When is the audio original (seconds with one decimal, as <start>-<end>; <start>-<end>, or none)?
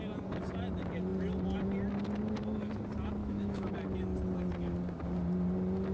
0.0-3.2; 3.7-5.9